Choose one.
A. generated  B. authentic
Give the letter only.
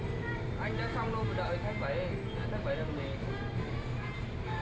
B